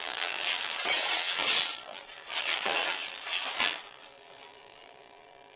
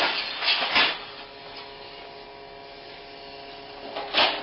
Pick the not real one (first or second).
first